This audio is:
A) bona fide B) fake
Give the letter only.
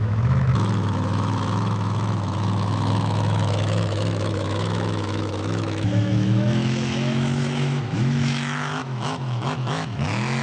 B